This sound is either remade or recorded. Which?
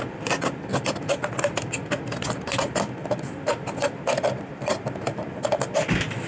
recorded